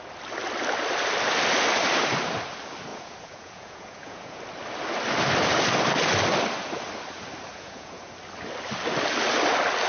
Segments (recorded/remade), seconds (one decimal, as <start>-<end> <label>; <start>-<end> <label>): 0.0-2.9 recorded; 2.9-4.4 remade; 4.4-7.5 recorded; 7.5-8.1 remade; 8.1-9.9 recorded